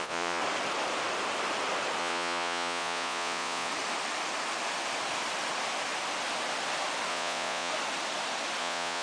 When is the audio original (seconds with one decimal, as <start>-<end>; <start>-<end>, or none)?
0.4-2.0; 3.7-7.1; 7.7-8.6